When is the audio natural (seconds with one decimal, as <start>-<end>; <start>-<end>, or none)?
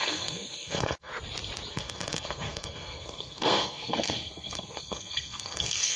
1.1-1.7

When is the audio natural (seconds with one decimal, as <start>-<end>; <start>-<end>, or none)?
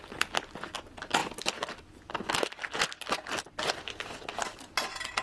0.0-5.2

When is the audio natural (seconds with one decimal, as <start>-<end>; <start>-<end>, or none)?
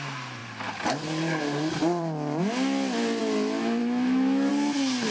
0.0-3.8; 4.5-5.1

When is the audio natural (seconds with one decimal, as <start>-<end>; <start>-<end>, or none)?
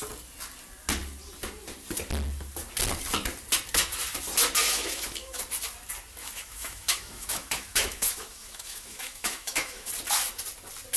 0.0-4.6; 5.4-6.2; 9.9-11.0